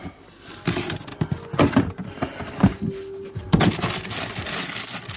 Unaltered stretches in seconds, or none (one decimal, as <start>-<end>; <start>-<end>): 0.0-5.2